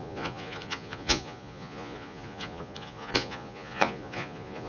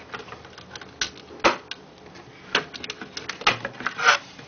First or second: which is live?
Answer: second